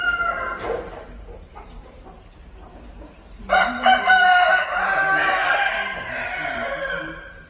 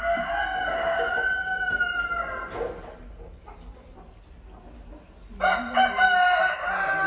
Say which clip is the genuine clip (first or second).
second